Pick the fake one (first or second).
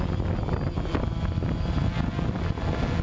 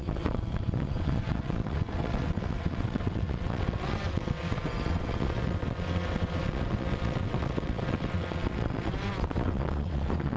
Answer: second